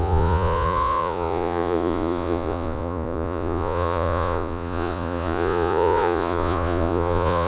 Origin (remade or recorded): remade